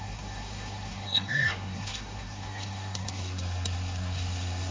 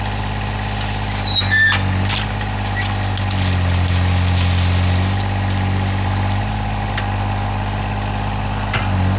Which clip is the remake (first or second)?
first